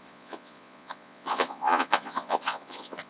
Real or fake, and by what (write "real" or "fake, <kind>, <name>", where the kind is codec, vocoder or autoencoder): fake, vocoder, Vocos